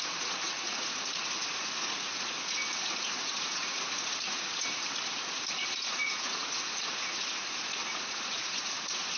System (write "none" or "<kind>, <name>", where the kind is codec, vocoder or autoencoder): vocoder, Vocos